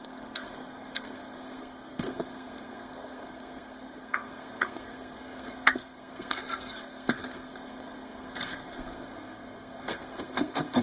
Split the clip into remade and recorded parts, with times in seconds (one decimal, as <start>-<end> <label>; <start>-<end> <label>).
0.0-10.8 remade